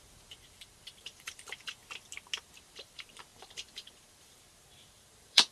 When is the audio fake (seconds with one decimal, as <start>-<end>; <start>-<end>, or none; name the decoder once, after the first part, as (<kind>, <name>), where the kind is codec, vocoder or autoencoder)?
0.0-1.8 (vocoder, BigVGAN v2); 2.4-5.5